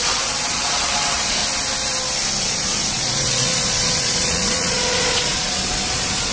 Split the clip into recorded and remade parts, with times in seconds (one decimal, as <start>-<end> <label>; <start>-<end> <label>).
0.0-1.4 remade; 1.4-2.4 recorded; 2.4-6.3 remade